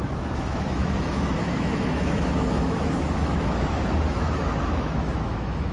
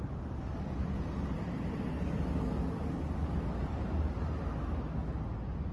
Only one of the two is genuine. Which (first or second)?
second